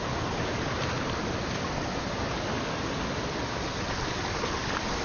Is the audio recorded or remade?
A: recorded